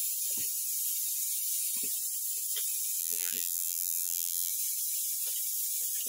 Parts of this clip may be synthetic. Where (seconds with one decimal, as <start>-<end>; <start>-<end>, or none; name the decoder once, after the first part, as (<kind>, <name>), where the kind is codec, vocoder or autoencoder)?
3.0-4.5 (vocoder, BigVGAN v2)